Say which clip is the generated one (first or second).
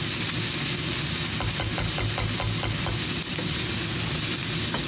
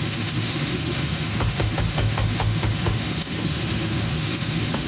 second